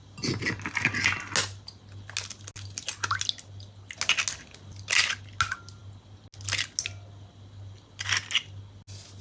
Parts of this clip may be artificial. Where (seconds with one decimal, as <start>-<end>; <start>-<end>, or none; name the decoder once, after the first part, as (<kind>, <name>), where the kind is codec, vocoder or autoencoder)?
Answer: none